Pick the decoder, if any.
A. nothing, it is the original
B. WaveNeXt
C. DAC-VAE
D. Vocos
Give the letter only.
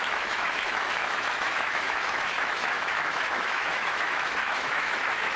C